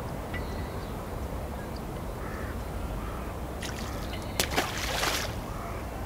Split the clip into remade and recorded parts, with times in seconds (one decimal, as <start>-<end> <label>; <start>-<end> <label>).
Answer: 0.0-0.8 recorded; 0.8-1.8 remade; 1.8-2.3 recorded; 2.3-2.9 remade; 2.9-6.1 recorded